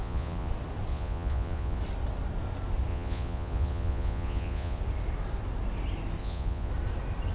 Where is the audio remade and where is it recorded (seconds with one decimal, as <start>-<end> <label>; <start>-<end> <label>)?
0.0-0.5 remade; 0.5-0.9 recorded; 0.9-1.8 remade; 1.8-2.9 recorded; 2.9-4.8 remade; 4.8-6.2 recorded; 6.2-6.7 remade; 6.7-7.3 recorded